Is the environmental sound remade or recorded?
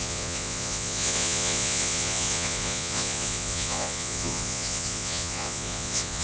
remade